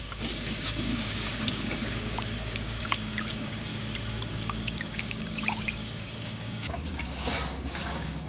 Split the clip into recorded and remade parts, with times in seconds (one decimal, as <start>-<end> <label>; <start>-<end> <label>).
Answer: 0.0-3.7 remade; 3.7-4.3 recorded; 4.3-8.3 remade